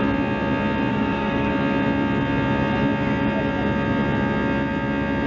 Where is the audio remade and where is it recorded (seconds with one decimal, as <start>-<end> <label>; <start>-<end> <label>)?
0.0-0.9 recorded; 0.9-1.5 remade; 1.5-5.3 recorded